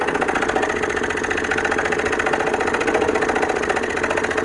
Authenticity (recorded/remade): recorded